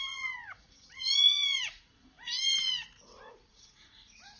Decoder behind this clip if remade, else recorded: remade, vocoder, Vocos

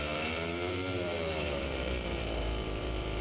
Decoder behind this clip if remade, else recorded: remade, vocoder, BigVGAN v2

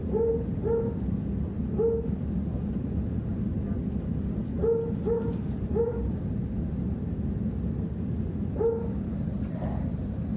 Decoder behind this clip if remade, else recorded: recorded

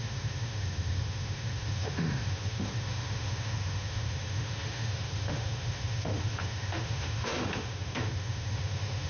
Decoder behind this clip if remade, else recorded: remade, autoencoder, DAC-VAE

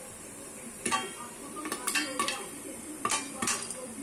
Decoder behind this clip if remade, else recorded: remade, vocoder, BigVGAN v2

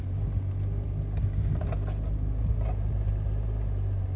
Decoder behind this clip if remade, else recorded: recorded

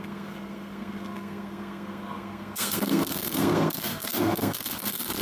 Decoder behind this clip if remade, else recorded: remade, codec, SNAC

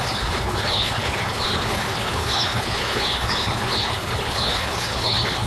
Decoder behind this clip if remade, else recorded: remade, codec, HILCodec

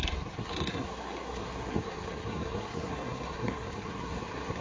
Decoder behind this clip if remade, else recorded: remade, codec, SNAC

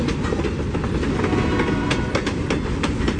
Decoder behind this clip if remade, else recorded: recorded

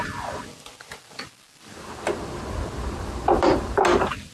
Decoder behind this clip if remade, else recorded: recorded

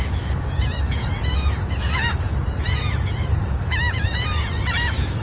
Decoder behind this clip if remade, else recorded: remade, autoencoder, DAC-VAE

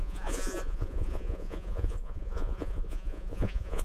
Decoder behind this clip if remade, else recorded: remade, vocoder, Vocos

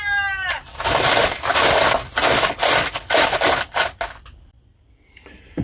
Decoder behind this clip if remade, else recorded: recorded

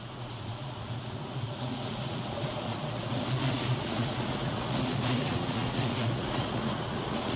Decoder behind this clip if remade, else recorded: remade, vocoder, Vocos